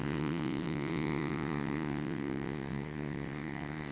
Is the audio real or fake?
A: fake